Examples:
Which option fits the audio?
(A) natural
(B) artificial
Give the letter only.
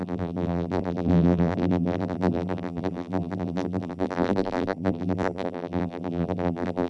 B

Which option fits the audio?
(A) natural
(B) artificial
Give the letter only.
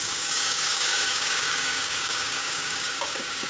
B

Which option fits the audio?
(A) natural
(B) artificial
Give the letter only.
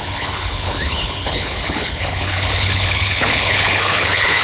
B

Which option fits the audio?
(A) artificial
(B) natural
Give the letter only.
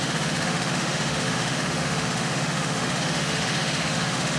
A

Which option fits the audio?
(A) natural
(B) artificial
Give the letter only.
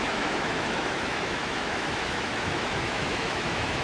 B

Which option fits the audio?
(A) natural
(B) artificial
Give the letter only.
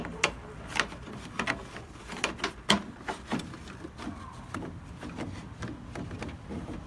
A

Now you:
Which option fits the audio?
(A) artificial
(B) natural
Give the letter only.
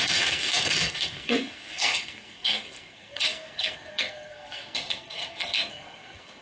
A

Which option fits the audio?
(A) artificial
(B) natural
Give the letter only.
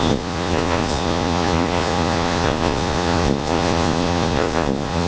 A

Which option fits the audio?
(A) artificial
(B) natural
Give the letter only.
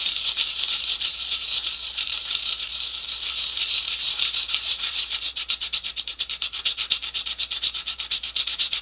A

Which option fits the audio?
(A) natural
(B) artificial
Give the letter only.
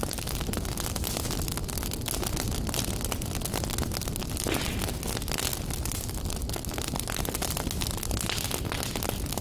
A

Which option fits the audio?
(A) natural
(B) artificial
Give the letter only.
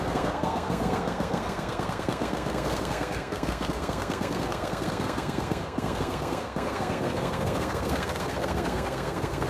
B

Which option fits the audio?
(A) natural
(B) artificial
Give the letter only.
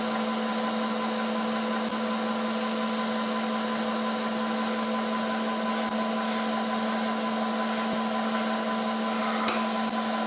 A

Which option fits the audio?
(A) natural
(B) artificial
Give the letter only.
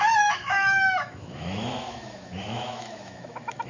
B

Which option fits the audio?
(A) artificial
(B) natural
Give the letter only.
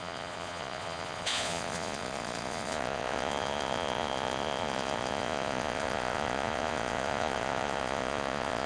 A